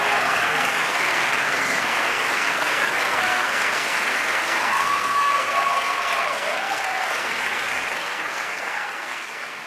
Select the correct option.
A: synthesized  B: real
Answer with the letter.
A